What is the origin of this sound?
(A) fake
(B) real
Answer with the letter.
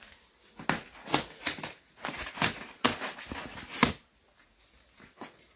B